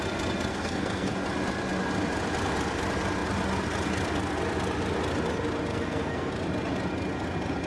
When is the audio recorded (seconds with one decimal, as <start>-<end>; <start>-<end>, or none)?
0.0-0.5; 1.1-5.7; 6.3-7.7